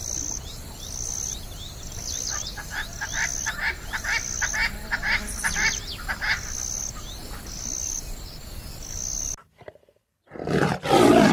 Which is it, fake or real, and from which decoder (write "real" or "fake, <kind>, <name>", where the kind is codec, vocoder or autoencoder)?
real